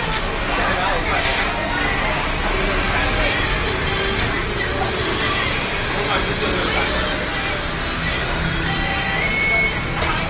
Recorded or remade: recorded